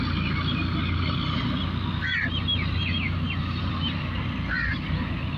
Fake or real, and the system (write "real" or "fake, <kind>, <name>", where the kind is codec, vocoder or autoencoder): real